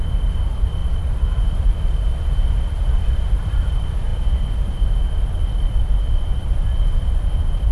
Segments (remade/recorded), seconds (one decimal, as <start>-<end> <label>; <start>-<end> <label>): 0.0-0.8 remade; 0.8-1.4 recorded; 1.4-4.1 remade; 4.1-5.6 recorded; 5.6-7.7 remade